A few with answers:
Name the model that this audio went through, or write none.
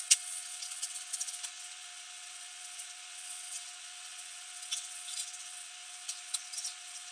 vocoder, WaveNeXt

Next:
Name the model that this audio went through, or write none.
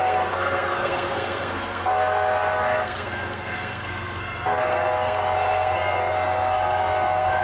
codec, SNAC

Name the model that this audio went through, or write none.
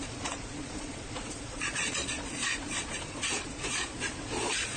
vocoder, Vocos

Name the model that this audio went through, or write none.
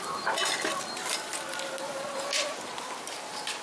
none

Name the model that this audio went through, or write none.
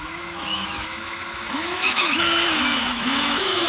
autoencoder, DAC-VAE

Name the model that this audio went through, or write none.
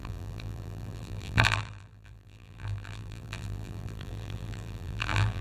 vocoder, BigVGAN v2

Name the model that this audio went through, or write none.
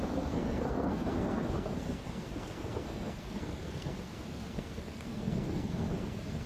codec, SNAC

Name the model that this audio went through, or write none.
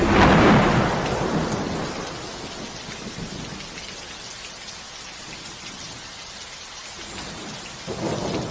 none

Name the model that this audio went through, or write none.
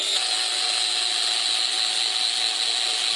none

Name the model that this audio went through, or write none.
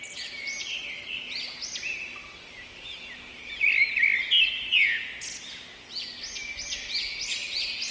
none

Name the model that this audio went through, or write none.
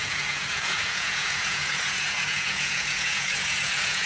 vocoder, Vocos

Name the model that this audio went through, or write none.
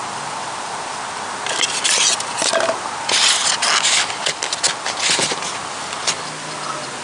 none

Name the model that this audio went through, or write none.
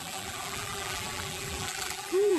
vocoder, BigVGAN v2